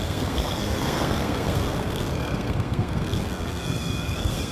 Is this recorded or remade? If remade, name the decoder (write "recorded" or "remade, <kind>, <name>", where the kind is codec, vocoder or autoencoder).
remade, codec, SNAC